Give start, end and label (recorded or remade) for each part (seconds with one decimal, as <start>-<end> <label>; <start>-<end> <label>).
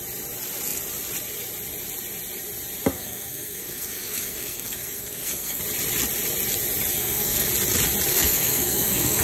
0.0-2.9 recorded; 2.9-5.6 remade; 5.6-6.9 recorded; 6.9-7.5 remade; 7.5-8.1 recorded; 8.1-9.2 remade